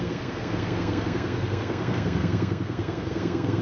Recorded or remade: remade